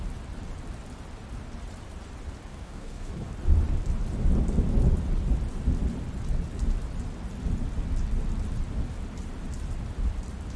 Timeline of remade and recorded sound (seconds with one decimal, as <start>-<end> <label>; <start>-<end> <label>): 0.0-2.5 recorded; 2.5-3.1 remade; 3.1-10.6 recorded